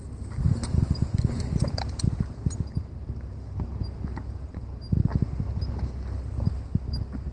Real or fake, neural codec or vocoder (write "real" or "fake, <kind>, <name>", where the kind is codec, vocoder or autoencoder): real